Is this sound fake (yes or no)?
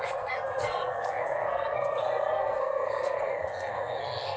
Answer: yes